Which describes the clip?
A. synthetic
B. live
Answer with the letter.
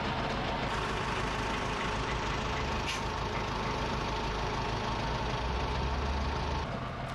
B